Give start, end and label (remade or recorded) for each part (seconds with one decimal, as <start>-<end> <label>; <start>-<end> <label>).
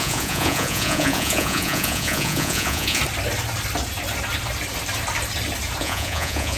0.0-3.0 remade; 3.0-5.8 recorded; 5.8-6.6 remade